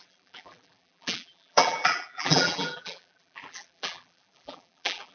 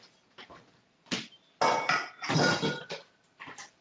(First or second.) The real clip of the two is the second